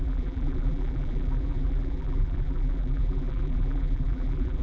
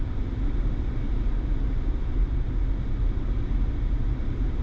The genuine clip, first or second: second